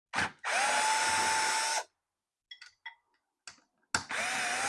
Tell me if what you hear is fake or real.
real